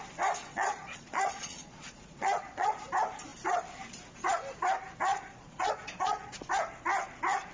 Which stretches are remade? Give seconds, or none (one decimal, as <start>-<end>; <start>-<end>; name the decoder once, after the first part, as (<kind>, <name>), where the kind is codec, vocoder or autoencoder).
0.5-2.8 (vocoder, Vocos); 5.1-6.5